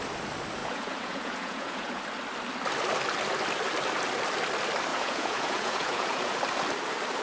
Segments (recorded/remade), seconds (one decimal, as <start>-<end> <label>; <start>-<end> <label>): 0.0-0.6 recorded; 0.6-2.0 remade; 2.0-4.9 recorded; 4.9-6.3 remade; 6.3-7.2 recorded